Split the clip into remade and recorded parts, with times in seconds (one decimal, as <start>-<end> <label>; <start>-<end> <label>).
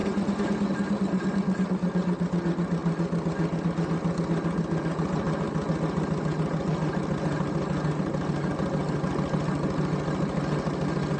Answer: 0.0-11.2 recorded